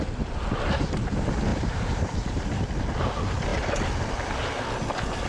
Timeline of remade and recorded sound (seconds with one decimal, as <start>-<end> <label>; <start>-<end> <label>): 0.0-1.5 recorded; 1.5-2.7 remade; 2.7-5.3 recorded